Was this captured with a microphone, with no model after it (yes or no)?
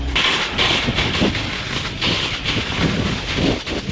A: yes